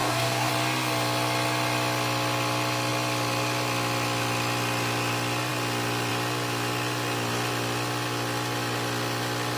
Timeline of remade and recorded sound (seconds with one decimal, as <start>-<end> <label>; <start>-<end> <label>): 0.0-0.5 remade; 0.5-9.6 recorded